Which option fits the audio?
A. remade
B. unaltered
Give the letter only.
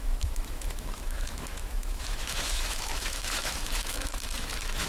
A